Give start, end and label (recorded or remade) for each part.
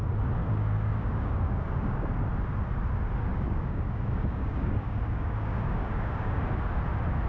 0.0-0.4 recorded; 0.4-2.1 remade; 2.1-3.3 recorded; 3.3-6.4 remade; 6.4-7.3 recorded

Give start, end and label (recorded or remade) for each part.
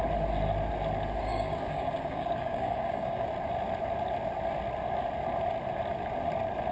0.0-1.3 recorded; 1.3-3.3 remade; 3.3-6.7 recorded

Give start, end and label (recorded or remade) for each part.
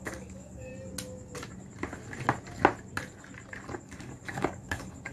0.0-0.7 remade; 0.7-3.8 recorded; 3.8-5.1 remade